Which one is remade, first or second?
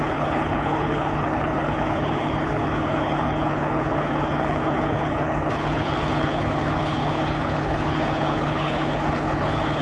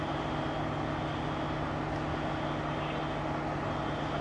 first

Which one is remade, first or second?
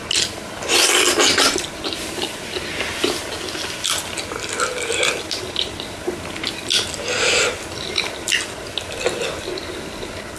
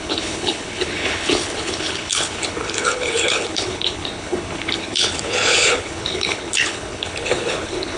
second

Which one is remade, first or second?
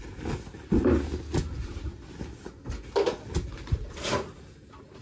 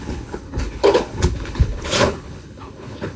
second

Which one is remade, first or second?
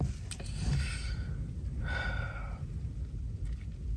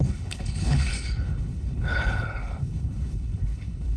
second